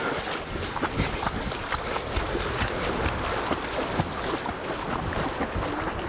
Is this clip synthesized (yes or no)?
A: no